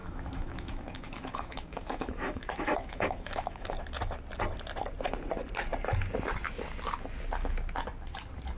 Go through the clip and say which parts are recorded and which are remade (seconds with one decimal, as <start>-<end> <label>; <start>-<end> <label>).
0.0-3.7 remade; 3.7-8.6 recorded